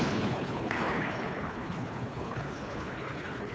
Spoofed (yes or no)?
yes